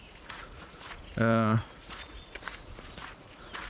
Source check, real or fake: fake